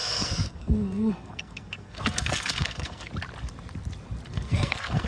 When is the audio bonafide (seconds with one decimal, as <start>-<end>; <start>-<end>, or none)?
3.1-4.3